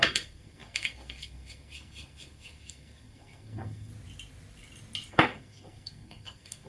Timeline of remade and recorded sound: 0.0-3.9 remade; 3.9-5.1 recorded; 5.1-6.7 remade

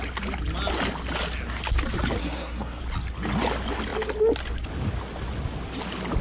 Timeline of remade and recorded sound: 0.0-2.2 recorded; 2.2-2.8 remade; 2.8-6.2 recorded

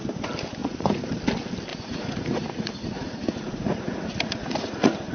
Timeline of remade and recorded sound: 0.0-0.6 recorded; 0.6-1.2 remade; 1.2-1.7 recorded; 1.7-5.1 remade

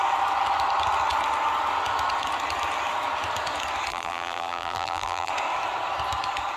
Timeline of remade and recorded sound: 0.0-3.9 recorded; 3.9-5.3 remade; 5.3-6.6 recorded

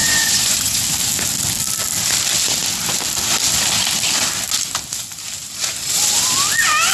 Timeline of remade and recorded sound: 0.0-0.8 remade; 0.8-6.9 recorded